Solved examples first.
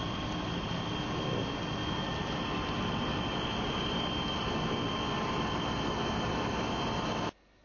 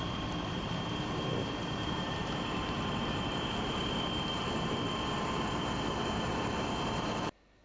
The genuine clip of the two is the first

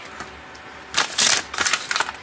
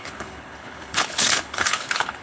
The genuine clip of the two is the first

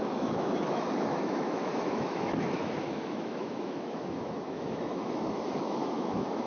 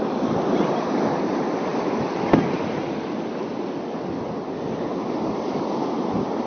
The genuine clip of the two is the second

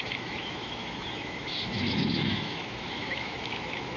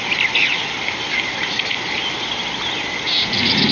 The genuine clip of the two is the second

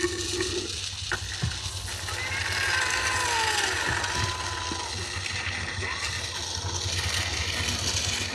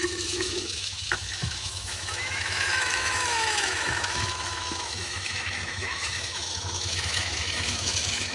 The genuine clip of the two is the first